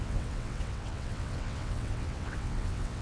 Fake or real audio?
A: fake